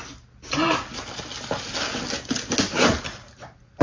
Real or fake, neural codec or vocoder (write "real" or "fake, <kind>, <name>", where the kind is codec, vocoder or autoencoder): real